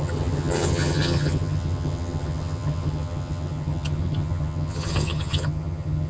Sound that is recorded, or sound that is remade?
remade